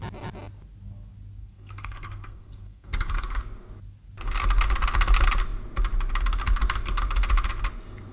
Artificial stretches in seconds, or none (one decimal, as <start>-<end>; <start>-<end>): 1.4-3.4